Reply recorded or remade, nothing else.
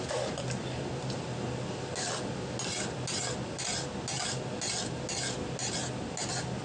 recorded